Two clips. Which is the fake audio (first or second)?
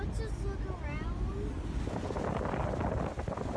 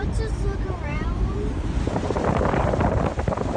second